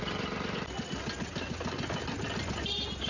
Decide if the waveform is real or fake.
real